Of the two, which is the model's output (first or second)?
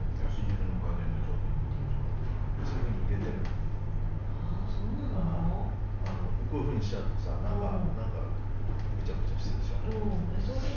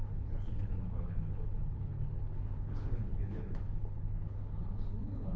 second